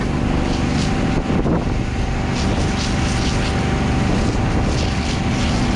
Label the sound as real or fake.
real